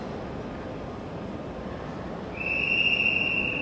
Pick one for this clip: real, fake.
real